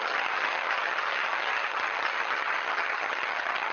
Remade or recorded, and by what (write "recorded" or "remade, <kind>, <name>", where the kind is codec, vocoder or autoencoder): remade, vocoder, HiFi-GAN